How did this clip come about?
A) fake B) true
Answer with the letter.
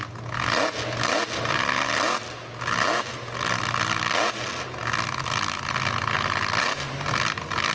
B